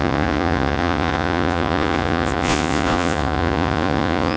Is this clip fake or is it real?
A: fake